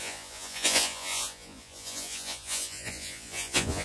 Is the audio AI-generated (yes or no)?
yes